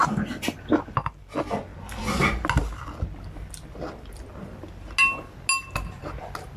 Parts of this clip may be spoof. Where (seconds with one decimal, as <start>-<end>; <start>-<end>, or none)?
none